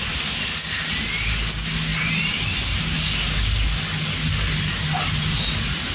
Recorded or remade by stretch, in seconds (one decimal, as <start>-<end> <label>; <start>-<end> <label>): 0.0-1.9 recorded; 1.9-2.6 remade; 2.6-5.9 recorded